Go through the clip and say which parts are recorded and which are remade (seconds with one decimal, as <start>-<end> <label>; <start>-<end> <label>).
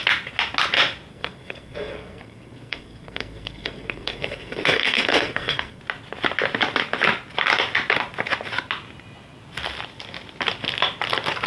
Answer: 0.0-1.1 recorded; 1.1-5.8 remade; 5.8-11.5 recorded